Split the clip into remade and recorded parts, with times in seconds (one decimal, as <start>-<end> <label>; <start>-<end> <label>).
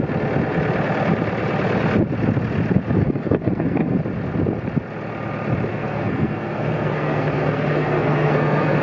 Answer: 0.0-3.0 recorded; 3.0-4.0 remade; 4.0-5.7 recorded; 5.7-8.8 remade